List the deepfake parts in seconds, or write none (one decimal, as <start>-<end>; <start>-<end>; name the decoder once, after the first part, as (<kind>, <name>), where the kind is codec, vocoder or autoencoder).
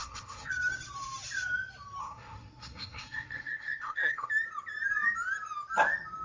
0.0-0.5 (codec, SNAC); 2.0-4.3